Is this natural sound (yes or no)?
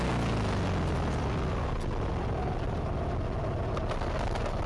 yes